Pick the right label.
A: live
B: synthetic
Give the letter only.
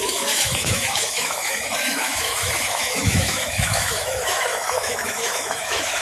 B